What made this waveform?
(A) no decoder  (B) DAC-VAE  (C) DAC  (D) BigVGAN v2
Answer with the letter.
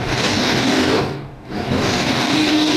C